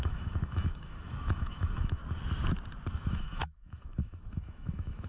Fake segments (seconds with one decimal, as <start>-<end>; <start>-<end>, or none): 0.0-2.0; 2.9-5.1